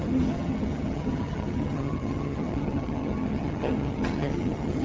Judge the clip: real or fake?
fake